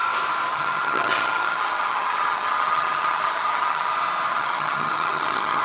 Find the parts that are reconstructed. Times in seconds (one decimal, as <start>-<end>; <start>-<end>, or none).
0.5-3.9; 4.3-5.6